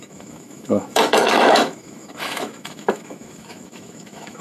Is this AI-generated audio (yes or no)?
yes